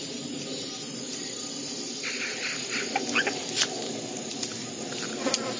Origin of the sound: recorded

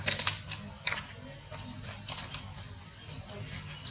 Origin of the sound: recorded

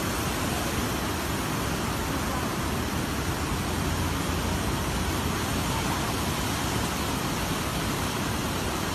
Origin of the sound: recorded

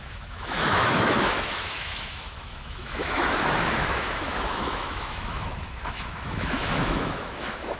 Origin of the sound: remade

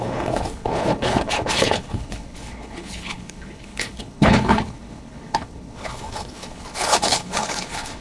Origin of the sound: remade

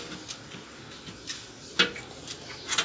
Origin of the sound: recorded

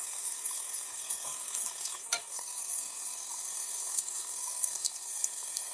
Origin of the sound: remade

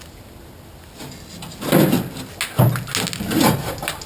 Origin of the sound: recorded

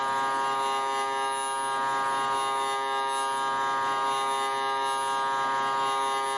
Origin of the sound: recorded